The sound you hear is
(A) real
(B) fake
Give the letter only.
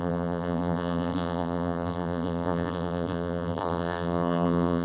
B